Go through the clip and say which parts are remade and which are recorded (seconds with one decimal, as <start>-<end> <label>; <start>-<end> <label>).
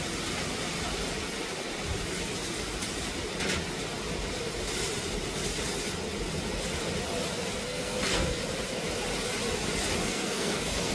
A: 0.0-7.7 recorded; 7.7-8.4 remade; 8.4-10.0 recorded; 10.0-10.9 remade